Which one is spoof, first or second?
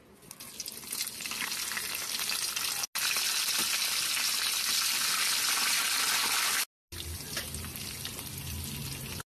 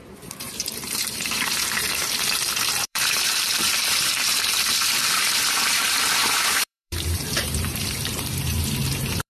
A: second